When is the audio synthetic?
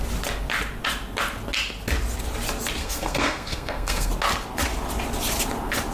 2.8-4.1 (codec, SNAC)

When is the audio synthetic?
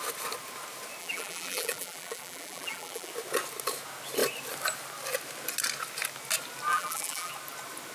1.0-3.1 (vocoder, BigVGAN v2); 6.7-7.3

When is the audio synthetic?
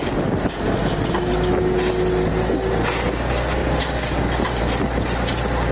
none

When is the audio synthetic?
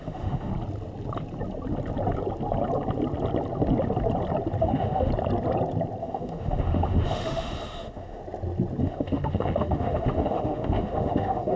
0.0-0.5 (autoencoder, DAC-VAE); 4.6-5.1; 6.0-8.2; 8.8-11.6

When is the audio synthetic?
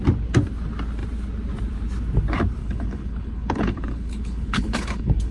2.6-5.3 (codec, HILCodec)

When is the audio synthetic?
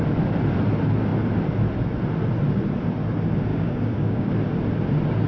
3.5-4.3 (codec, DAC)